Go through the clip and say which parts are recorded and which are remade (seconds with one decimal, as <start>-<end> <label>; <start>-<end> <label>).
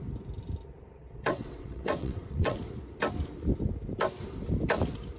0.0-1.0 recorded; 1.0-2.6 remade; 2.6-5.2 recorded